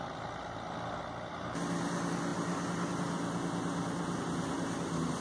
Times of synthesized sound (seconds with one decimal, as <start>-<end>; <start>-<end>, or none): none